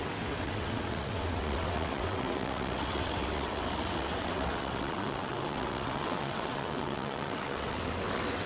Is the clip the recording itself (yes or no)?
no